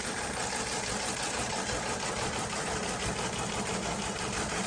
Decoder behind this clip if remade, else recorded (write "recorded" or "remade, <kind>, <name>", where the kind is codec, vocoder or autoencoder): recorded